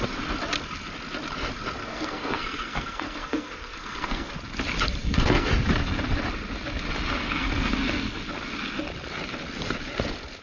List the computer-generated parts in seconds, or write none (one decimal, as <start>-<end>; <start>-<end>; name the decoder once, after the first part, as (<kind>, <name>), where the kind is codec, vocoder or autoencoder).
1.8-4.3 (codec, SNAC); 5.0-5.5; 7.2-8.2